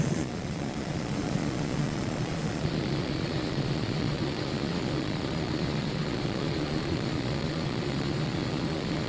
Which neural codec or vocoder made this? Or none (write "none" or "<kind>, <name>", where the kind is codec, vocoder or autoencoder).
vocoder, Vocos